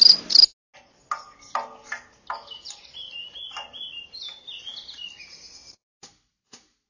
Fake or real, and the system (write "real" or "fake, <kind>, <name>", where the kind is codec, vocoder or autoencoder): real